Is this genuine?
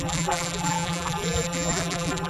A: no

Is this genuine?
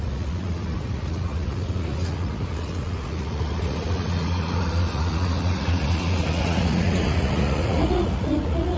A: no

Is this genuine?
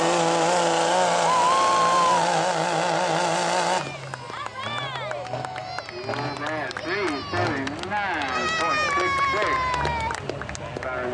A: yes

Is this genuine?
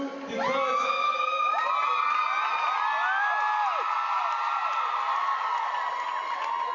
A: yes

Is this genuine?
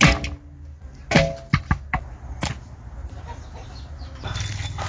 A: yes